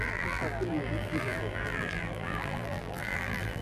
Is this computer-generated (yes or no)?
yes